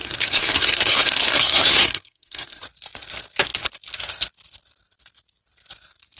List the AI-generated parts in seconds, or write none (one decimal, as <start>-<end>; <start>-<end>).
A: 0.0-2.6

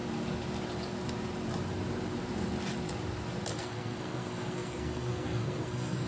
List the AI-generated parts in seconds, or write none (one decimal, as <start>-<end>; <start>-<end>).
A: 3.5-6.1

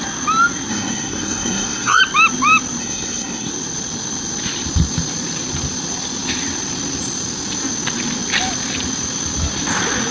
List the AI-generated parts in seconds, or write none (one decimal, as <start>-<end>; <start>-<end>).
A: 0.7-2.0; 2.8-3.5

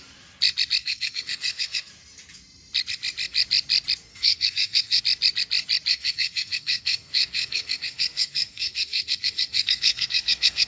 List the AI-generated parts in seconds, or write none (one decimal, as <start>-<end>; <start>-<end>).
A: 0.8-1.9; 4.1-5.0; 5.9-10.7

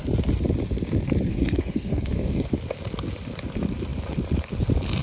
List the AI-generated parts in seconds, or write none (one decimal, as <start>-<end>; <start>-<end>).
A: 1.3-2.5

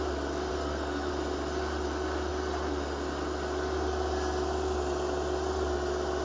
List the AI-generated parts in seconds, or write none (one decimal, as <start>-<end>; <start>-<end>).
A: 0.5-1.1

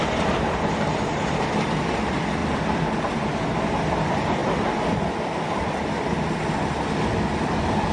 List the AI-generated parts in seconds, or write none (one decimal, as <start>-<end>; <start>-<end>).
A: none

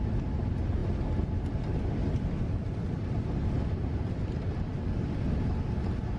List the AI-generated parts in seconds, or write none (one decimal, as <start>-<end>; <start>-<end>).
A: none